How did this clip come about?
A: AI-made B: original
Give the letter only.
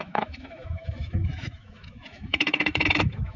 A